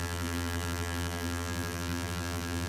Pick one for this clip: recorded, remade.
remade